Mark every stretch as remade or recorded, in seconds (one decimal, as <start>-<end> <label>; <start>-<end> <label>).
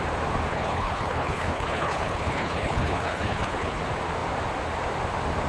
0.0-0.5 recorded; 0.5-3.8 remade; 3.8-5.5 recorded